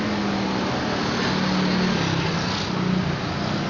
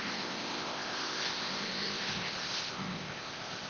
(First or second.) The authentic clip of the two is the first